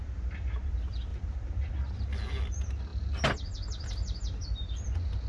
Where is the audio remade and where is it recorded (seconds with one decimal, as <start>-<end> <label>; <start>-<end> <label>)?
0.0-0.6 remade; 0.6-1.1 recorded; 1.1-1.7 remade; 1.7-2.9 recorded; 2.9-4.8 remade; 4.8-5.3 recorded